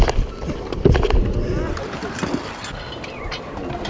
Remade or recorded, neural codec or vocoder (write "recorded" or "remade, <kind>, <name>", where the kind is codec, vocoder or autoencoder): recorded